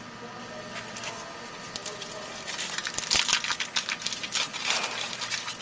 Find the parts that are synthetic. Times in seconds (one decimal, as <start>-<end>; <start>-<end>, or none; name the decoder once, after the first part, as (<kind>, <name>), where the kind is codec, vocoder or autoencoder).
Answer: none